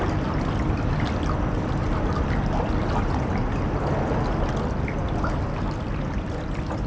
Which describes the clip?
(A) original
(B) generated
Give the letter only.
A